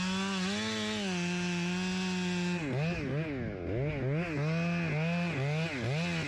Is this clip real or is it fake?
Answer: real